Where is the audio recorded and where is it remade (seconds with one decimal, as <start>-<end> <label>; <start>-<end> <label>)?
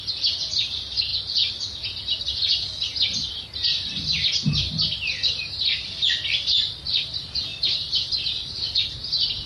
0.0-7.5 recorded; 7.5-8.1 remade; 8.1-9.5 recorded